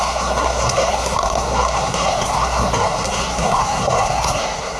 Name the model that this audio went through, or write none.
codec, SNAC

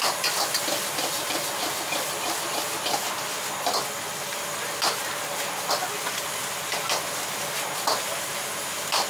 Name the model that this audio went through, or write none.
none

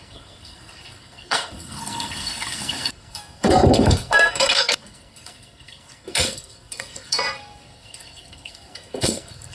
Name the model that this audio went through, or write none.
codec, SNAC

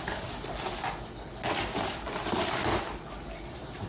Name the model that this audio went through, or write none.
none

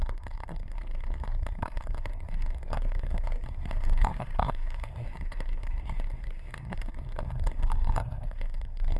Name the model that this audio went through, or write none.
codec, SNAC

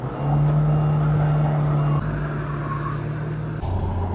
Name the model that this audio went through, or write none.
none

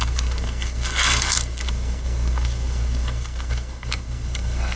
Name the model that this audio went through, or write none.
codec, SNAC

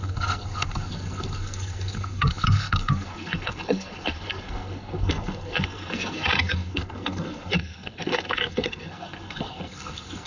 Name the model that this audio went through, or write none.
codec, SNAC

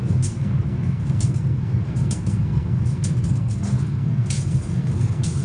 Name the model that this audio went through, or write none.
codec, SNAC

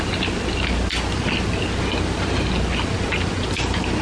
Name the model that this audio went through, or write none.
none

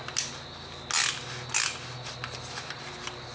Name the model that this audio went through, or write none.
none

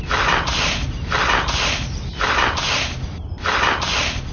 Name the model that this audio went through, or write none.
none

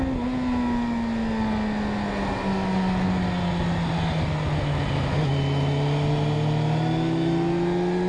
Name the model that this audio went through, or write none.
none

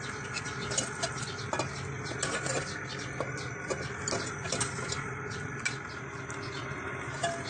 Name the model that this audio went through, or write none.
none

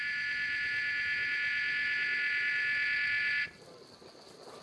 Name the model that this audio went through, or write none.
none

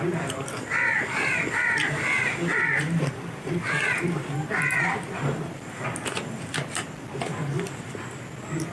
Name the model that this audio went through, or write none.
none